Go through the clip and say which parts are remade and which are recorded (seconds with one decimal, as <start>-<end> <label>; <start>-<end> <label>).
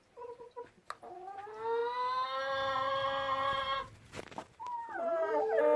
0.0-5.8 recorded